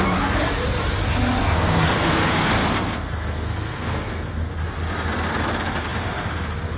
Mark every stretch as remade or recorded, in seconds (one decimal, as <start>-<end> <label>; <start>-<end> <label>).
0.0-1.4 recorded; 1.4-4.5 remade; 4.5-6.8 recorded